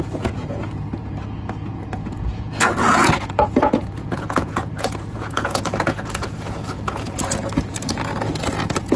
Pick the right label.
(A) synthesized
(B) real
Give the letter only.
A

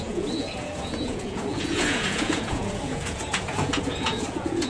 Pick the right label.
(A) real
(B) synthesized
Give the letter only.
B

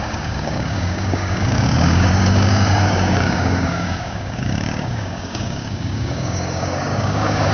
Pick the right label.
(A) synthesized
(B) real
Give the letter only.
A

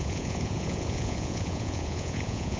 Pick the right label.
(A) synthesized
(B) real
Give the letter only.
A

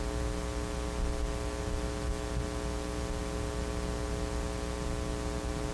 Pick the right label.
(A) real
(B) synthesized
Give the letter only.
A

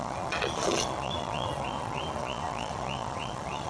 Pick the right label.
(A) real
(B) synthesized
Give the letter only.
B